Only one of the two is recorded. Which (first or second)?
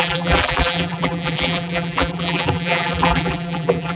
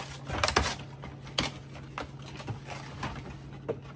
second